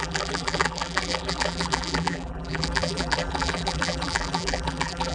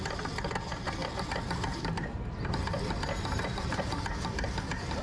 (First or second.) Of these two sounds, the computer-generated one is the first